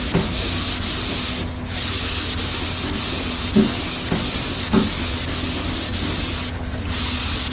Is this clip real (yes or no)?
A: yes